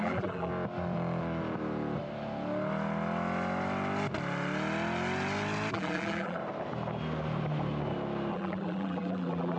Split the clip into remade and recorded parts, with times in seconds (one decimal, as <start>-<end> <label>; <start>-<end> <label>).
0.0-0.5 remade; 0.5-5.7 recorded; 5.7-6.4 remade; 6.4-8.3 recorded; 8.3-9.6 remade